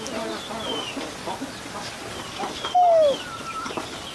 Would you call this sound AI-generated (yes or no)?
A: no